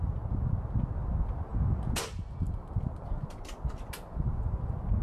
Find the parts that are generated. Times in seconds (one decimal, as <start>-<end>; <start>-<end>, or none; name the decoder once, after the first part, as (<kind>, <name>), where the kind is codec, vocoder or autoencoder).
none